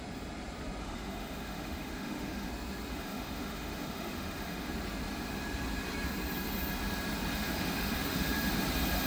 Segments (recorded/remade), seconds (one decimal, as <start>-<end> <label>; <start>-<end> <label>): 0.0-0.8 recorded; 0.8-2.5 remade; 2.5-2.9 recorded; 2.9-4.7 remade; 4.7-7.3 recorded; 7.3-8.5 remade; 8.5-9.1 recorded